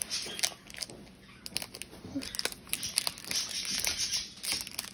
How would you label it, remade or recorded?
recorded